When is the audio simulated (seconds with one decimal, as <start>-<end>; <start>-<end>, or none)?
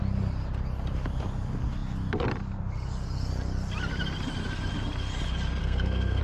5.6-6.2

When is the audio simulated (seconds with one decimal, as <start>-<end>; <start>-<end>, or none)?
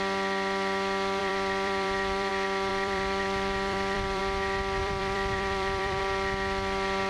1.2-2.3; 2.7-4.2; 4.8-6.0